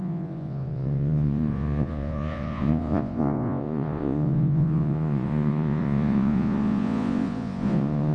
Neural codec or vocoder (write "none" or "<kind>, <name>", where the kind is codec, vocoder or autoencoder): vocoder, Vocos